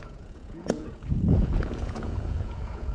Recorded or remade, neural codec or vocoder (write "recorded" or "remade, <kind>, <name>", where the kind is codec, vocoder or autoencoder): remade, vocoder, Vocos